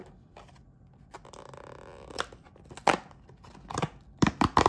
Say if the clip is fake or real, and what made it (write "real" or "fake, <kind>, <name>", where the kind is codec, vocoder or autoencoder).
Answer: real